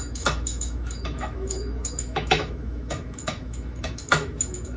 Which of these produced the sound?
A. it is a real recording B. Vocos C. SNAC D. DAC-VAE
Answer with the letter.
D